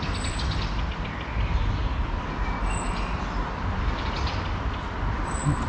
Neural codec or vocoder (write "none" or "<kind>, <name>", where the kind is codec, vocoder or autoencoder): none